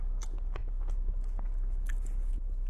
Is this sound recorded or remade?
recorded